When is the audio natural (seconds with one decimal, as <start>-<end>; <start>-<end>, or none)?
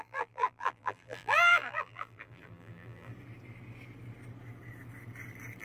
3.1-5.6